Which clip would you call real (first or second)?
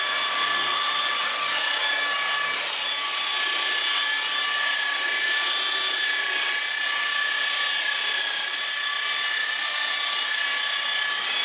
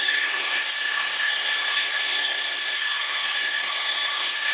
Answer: first